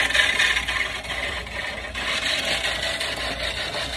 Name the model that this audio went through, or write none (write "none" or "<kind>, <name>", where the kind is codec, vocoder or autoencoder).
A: none